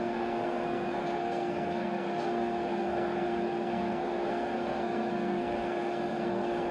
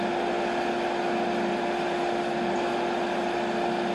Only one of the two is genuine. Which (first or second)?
second